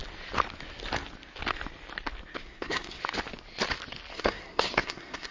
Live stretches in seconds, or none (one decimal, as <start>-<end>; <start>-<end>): 0.0-2.4; 3.0-4.1